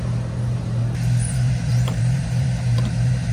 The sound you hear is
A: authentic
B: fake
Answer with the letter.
B